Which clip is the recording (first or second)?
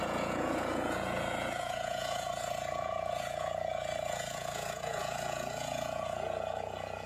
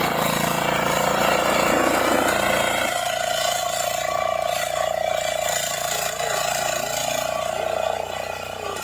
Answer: second